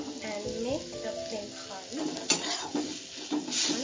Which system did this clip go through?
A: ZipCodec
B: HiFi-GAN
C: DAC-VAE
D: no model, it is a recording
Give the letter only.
D